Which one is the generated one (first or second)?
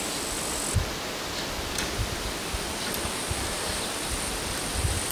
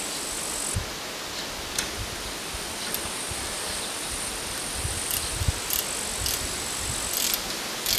first